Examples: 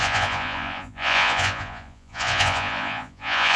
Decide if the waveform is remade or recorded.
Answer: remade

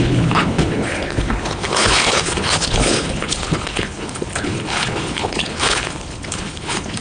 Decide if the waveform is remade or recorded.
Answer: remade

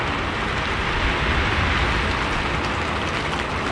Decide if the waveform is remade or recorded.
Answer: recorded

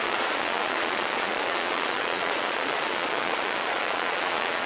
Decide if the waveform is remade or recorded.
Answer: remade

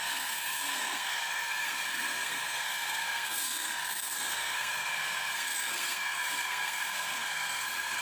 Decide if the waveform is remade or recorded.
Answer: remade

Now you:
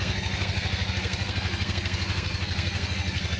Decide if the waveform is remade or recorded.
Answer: remade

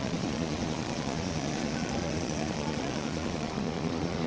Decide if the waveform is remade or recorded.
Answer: remade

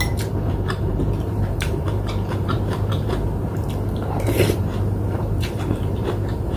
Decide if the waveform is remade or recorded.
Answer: remade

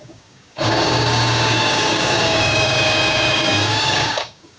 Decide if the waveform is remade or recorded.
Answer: remade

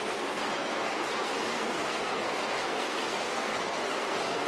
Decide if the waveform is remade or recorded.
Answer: remade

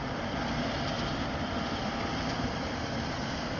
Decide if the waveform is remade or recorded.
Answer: remade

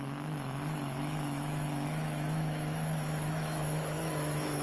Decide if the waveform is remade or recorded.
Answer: remade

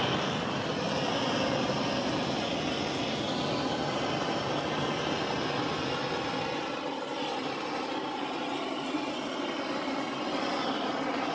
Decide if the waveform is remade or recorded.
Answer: recorded